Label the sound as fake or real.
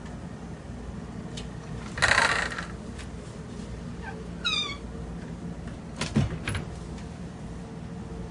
real